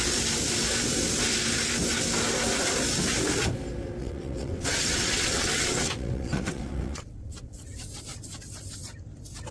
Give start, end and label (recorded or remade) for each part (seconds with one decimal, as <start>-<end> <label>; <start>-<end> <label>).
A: 0.0-4.0 recorded; 4.0-7.8 remade; 7.8-9.5 recorded